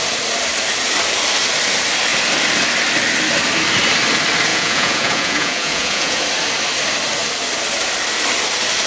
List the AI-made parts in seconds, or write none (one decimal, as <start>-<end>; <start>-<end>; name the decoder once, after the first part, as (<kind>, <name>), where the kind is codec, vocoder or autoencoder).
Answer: 4.5-6.2 (vocoder, Vocos)